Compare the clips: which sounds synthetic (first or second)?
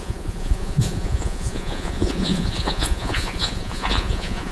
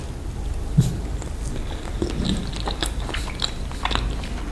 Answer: first